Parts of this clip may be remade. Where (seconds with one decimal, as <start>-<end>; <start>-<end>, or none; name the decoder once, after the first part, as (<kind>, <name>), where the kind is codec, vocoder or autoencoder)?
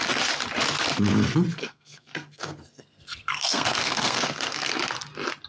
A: 1.5-4.8 (codec, SNAC)